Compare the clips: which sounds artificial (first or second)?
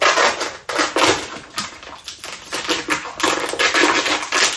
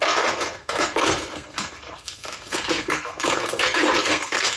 second